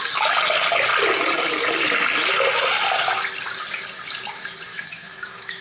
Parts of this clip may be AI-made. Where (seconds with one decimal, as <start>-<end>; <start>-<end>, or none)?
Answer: 4.7-5.6